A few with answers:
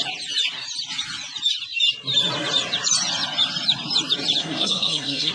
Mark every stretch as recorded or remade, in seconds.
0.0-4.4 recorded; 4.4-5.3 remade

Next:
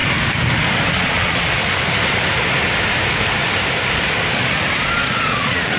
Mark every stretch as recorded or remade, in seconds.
0.0-0.9 recorded; 0.9-1.6 remade; 1.6-4.7 recorded; 4.7-5.8 remade

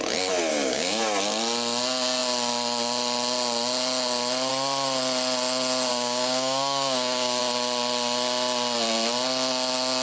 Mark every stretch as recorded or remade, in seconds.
0.0-0.5 recorded; 0.5-1.0 remade; 1.0-5.9 recorded; 5.9-7.4 remade; 7.4-10.0 recorded

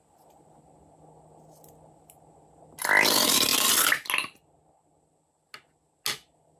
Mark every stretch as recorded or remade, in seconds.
0.0-6.6 recorded

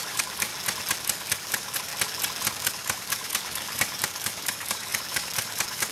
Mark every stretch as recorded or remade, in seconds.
0.0-0.5 remade; 0.5-1.0 recorded; 1.0-1.9 remade; 1.9-2.5 recorded; 2.5-5.9 remade

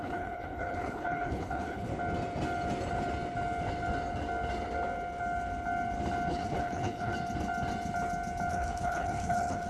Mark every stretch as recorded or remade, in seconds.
0.0-1.9 remade; 1.9-6.3 recorded; 6.3-7.1 remade; 7.1-8.5 recorded; 8.5-9.7 remade

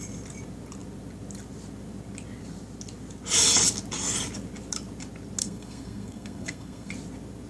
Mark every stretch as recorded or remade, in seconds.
0.0-5.4 recorded; 5.4-6.9 remade; 6.9-7.5 recorded

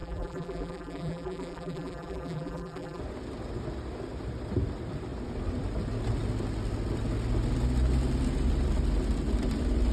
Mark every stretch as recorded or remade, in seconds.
0.0-3.0 remade; 3.0-9.9 recorded